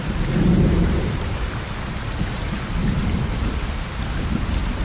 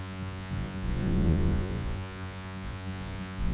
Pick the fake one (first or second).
second